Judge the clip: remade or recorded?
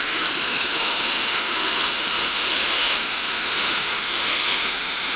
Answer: remade